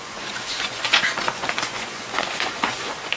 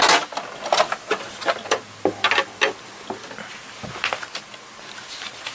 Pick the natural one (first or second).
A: second